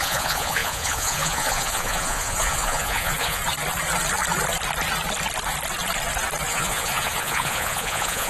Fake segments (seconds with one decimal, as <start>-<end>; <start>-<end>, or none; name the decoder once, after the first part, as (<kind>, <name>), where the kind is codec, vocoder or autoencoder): 0.0-3.4 (vocoder, Vocos); 6.5-8.3